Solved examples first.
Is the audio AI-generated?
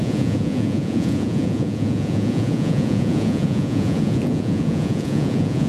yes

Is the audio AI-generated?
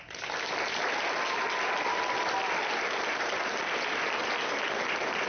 no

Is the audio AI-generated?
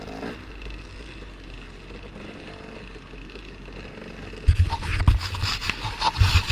no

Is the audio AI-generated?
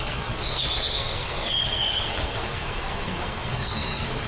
yes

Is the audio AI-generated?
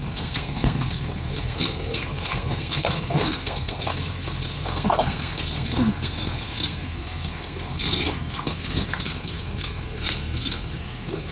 yes